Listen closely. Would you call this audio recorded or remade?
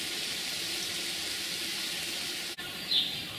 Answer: recorded